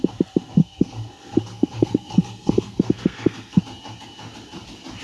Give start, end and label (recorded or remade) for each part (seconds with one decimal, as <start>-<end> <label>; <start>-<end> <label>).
0.0-0.6 recorded; 0.6-3.6 remade; 3.6-5.0 recorded